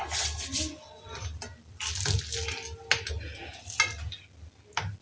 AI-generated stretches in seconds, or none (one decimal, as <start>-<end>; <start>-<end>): none